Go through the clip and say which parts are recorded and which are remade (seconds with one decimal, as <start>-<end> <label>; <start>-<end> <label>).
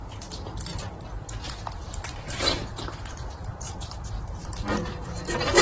0.0-0.7 recorded; 0.7-4.1 remade; 4.1-5.6 recorded